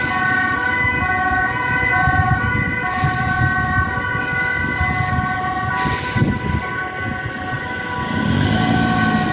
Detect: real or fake real